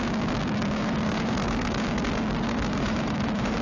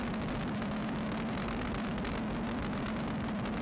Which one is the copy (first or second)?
first